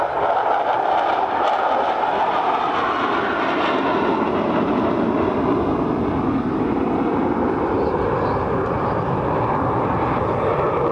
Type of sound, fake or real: real